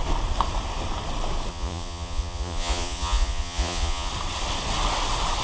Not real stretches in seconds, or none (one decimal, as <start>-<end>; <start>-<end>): 1.5-4.1